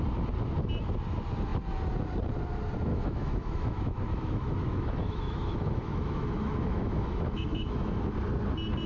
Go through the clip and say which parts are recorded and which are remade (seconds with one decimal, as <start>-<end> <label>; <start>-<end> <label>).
0.0-2.9 recorded; 2.9-8.0 remade; 8.0-8.9 recorded